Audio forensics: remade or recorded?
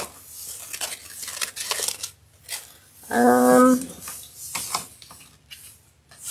recorded